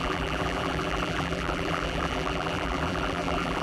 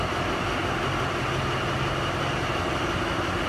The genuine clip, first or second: second